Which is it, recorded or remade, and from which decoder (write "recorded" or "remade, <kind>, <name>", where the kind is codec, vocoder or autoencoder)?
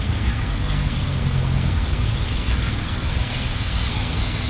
remade, codec, SNAC